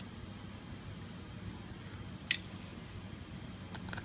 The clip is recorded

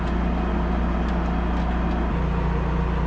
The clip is recorded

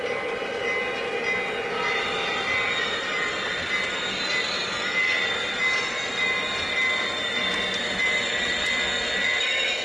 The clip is recorded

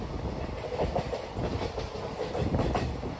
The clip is recorded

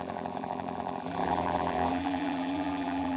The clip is remade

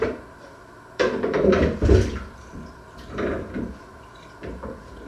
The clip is remade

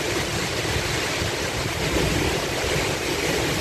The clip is remade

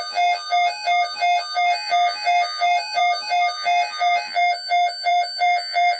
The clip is remade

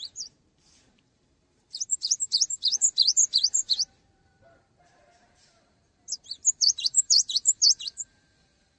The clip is remade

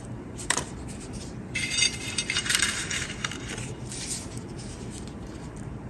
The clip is remade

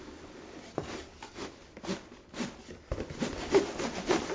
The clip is recorded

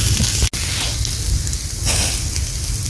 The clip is recorded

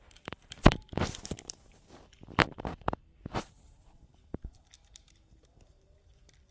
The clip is remade